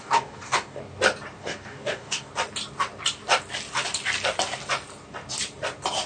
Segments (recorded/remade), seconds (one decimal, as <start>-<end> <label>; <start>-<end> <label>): 0.0-0.8 remade; 0.8-1.4 recorded; 1.4-2.3 remade; 2.3-6.1 recorded